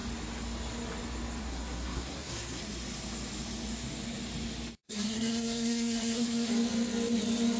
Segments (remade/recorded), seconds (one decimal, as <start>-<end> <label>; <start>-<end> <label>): 0.0-1.4 recorded; 1.4-2.6 remade; 2.6-4.8 recorded; 4.8-6.5 remade; 6.5-7.6 recorded